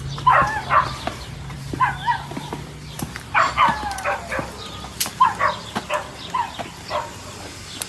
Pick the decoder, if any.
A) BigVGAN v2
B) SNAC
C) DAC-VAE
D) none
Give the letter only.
D